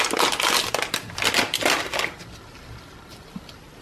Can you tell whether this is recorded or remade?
recorded